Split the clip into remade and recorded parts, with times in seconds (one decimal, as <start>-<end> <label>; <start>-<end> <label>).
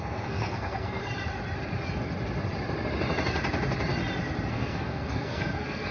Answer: 0.0-1.0 remade; 1.0-4.5 recorded; 4.5-5.9 remade